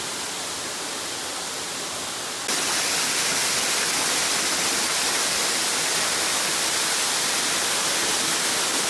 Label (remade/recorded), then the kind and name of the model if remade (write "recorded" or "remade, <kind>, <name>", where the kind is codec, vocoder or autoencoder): recorded